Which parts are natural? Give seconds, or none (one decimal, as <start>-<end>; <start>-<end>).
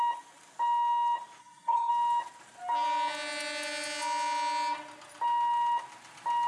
0.0-1.4; 1.9-6.5